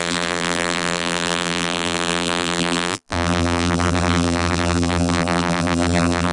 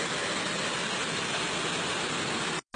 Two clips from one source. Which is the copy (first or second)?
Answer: first